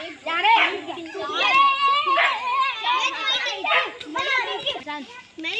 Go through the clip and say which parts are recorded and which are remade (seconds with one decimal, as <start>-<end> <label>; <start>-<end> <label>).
0.0-5.6 recorded